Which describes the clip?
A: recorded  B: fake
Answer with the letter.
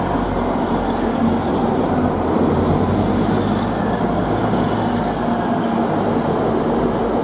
A